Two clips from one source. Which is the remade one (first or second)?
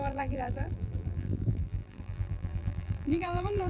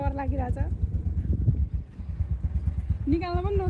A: first